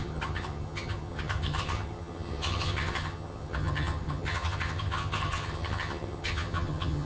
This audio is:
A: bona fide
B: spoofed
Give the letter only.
B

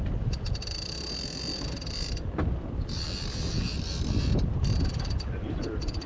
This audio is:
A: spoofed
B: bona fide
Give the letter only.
B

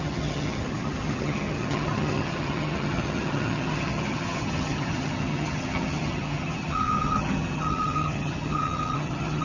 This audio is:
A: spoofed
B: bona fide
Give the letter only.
A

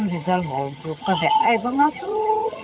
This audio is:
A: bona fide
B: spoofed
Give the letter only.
B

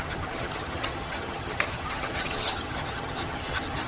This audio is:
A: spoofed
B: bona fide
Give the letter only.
A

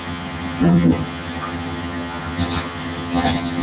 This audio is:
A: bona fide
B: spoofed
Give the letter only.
B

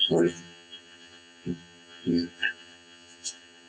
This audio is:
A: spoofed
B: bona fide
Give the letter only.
A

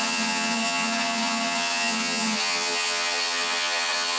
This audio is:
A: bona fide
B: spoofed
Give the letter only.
B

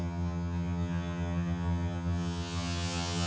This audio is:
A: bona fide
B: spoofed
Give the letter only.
B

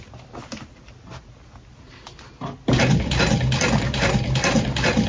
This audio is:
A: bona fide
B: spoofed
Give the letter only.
A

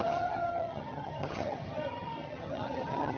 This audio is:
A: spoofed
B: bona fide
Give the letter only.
A